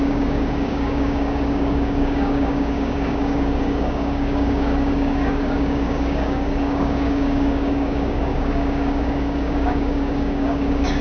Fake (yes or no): yes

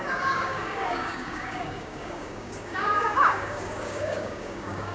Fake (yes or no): yes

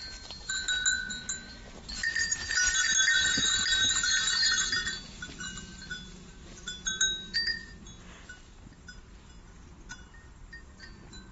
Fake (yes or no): no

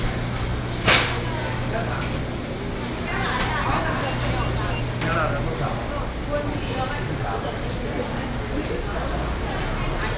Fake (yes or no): no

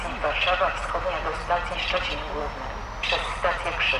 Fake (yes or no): no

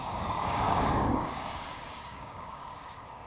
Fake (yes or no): yes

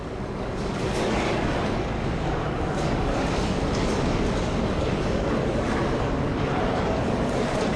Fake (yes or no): yes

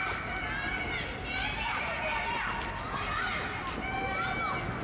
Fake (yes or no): no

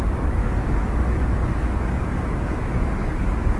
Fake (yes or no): yes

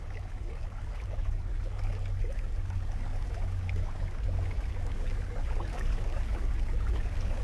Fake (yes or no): yes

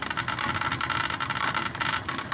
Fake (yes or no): no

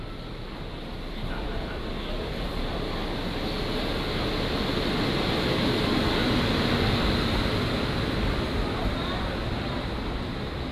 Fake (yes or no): no